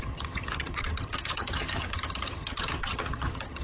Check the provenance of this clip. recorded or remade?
remade